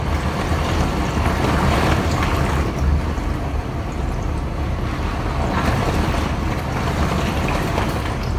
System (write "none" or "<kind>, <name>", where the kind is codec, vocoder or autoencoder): none